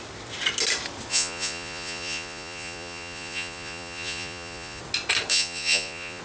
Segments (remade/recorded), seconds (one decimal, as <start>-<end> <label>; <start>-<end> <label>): 0.0-1.1 recorded; 1.1-4.8 remade; 4.8-5.3 recorded; 5.3-6.2 remade